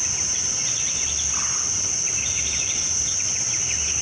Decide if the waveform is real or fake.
real